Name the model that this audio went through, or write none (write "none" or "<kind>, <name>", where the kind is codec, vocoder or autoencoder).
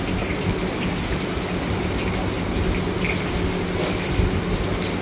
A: none